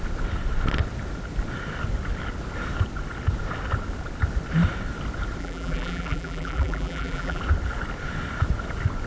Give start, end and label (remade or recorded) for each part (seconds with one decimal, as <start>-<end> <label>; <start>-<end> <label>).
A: 0.0-5.4 recorded; 5.4-7.4 remade; 7.4-9.1 recorded